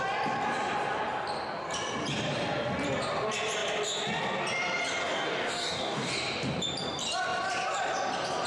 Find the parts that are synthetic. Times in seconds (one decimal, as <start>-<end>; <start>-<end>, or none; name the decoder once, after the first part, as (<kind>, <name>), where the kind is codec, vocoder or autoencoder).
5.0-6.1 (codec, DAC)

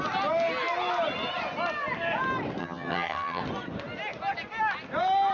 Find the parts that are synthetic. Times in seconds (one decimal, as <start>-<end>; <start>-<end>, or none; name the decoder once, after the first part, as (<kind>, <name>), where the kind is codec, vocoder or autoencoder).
2.6-3.4 (vocoder, HiFi-GAN)

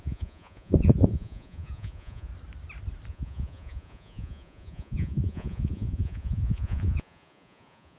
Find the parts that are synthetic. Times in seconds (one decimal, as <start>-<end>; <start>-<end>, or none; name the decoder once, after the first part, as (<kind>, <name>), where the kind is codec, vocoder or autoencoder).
0.0-2.3 (vocoder, Vocos); 3.1-8.0

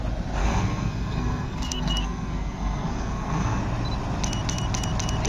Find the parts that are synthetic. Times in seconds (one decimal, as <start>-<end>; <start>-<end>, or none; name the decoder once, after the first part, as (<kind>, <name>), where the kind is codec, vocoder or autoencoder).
0.4-3.6 (codec, SNAC)

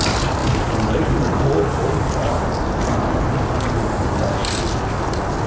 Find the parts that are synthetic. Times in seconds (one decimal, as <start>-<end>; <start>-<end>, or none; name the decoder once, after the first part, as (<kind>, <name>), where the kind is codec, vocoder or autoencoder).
none

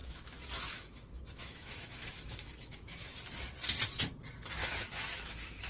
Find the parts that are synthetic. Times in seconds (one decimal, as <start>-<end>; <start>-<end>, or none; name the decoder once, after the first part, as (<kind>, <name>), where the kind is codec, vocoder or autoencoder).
0.0-3.1 (autoencoder, DAC-VAE); 4.6-5.7